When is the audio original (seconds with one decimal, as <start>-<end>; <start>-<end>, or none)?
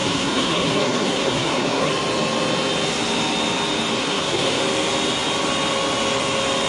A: 1.9-4.0; 4.6-6.7